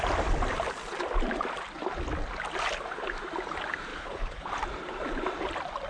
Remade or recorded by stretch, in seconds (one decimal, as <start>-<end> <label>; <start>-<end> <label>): 0.0-3.9 recorded; 3.9-4.5 remade; 4.5-5.9 recorded

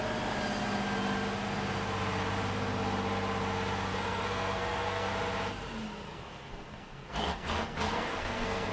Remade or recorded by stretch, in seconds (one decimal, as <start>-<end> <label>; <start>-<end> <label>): 0.0-3.9 recorded; 3.9-5.1 remade; 5.1-6.1 recorded; 6.1-8.7 remade